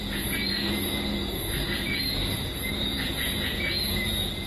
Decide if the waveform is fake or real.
fake